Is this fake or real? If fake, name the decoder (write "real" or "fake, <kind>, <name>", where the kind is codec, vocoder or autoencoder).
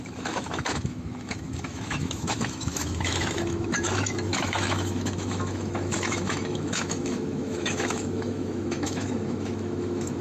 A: fake, autoencoder, DAC-VAE